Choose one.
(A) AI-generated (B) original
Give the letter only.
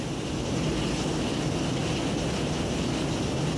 B